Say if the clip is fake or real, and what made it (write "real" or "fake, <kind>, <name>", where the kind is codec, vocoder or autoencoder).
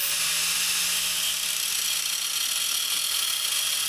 real